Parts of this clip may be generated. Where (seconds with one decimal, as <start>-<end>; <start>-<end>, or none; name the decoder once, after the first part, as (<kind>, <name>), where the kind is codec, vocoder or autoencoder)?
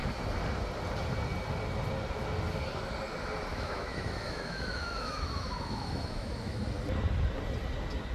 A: 3.5-6.6 (autoencoder, DAC-VAE)